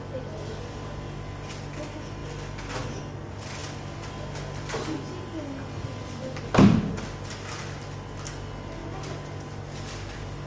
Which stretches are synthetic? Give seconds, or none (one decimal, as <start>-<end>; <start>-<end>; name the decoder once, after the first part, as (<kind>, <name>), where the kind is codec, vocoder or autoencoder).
none